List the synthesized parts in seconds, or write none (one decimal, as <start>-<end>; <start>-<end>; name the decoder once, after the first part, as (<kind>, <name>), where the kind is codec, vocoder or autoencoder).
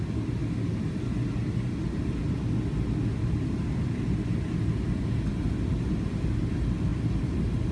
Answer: none